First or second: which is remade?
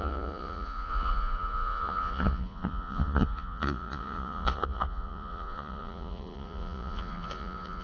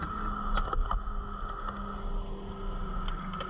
first